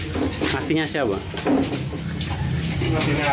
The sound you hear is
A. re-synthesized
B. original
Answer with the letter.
B